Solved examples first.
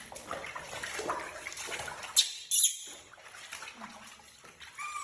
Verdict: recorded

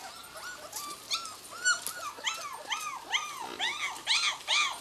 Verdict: recorded